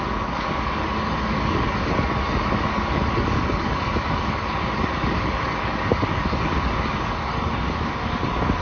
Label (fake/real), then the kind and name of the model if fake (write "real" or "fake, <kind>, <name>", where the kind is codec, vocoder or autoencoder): fake, codec, DAC